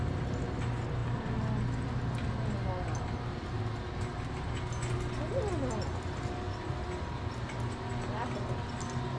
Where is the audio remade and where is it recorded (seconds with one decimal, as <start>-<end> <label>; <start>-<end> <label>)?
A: 0.0-9.2 recorded